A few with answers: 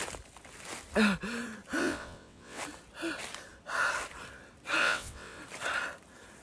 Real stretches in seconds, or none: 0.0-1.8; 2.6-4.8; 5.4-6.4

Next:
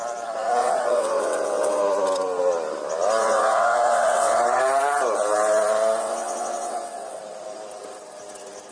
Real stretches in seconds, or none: 0.0-0.6; 1.8-3.2; 4.6-6.0; 7.2-8.7

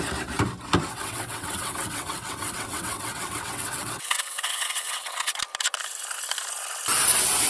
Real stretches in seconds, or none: 0.0-0.9; 5.4-7.5